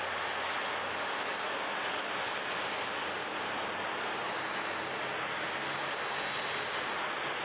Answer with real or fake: real